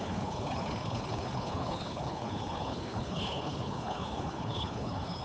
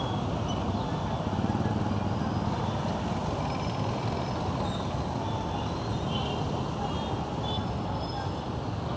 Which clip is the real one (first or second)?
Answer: second